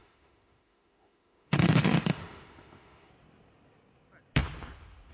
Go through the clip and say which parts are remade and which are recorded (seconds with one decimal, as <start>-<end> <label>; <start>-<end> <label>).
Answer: 0.0-3.1 remade; 3.1-5.1 recorded